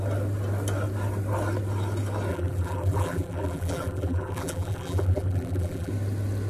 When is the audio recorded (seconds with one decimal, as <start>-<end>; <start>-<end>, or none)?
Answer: 0.0-2.3; 5.9-6.5